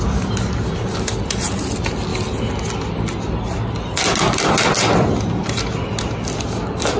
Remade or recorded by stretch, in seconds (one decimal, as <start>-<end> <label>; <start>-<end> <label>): 0.0-7.0 recorded